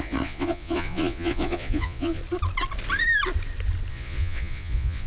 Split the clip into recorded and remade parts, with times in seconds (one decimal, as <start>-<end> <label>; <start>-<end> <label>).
0.0-2.2 remade; 2.2-3.9 recorded; 3.9-5.1 remade